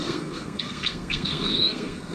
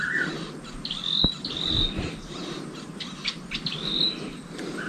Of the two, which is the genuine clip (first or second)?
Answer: second